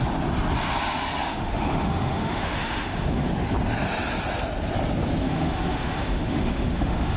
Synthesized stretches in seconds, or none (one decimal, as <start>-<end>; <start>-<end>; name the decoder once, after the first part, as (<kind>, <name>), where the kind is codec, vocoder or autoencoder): 1.2-3.3 (autoencoder, DAC-VAE); 5.2-7.2